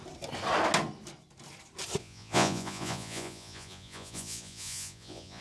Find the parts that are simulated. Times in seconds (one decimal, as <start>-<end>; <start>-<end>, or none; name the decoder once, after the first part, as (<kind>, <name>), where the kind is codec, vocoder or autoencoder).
2.0-5.4 (vocoder, Vocos)